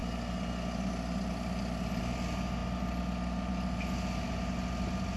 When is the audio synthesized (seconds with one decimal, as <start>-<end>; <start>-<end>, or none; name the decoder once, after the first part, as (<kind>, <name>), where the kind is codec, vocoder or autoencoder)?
none